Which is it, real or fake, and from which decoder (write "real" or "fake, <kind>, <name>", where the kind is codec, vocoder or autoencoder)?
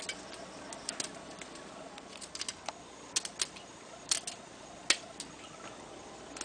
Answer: real